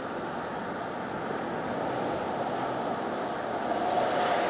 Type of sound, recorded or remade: recorded